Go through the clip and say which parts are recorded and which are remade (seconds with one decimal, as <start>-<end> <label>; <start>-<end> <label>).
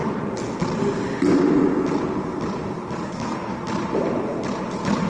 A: 0.0-3.1 recorded; 3.1-3.5 remade; 3.5-5.1 recorded